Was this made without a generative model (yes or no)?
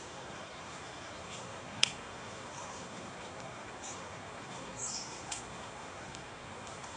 no